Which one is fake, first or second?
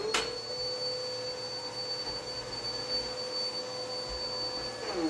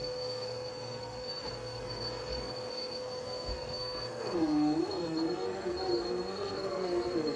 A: second